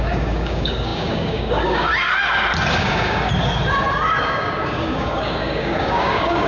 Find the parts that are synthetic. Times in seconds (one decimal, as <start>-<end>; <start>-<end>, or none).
0.0-1.9; 2.8-3.3; 4.2-6.5